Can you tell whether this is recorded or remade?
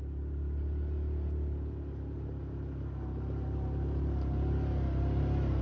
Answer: recorded